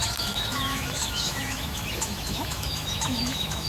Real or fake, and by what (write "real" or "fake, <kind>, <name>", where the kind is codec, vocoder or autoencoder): fake, autoencoder, DAC-VAE